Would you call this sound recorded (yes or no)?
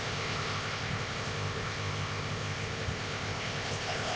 no